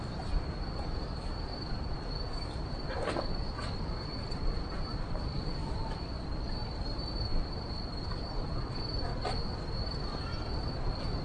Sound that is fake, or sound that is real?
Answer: fake